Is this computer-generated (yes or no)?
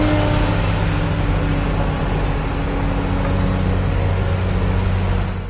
no